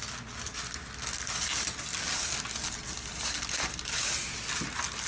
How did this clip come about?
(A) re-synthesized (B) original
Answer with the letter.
B